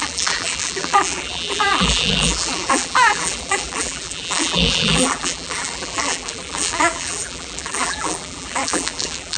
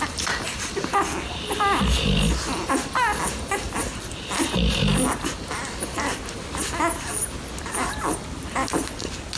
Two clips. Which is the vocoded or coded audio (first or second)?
first